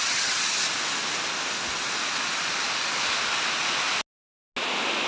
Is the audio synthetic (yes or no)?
no